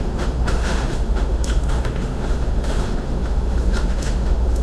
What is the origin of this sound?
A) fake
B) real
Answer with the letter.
A